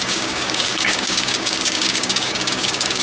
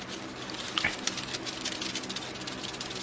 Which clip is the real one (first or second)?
second